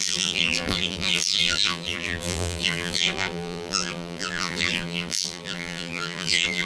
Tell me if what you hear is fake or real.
fake